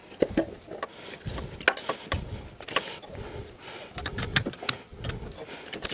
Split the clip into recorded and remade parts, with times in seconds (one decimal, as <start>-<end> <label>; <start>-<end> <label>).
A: 0.0-5.9 recorded